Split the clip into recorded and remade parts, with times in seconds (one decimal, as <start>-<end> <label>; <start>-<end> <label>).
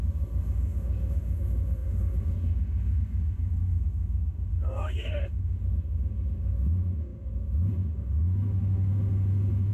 0.0-9.7 remade